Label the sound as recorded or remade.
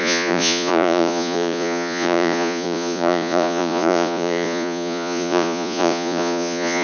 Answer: remade